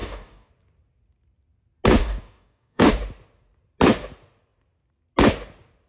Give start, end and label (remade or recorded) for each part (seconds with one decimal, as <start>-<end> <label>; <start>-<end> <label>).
0.0-0.5 remade; 0.5-2.0 recorded; 2.0-2.9 remade; 2.9-5.9 recorded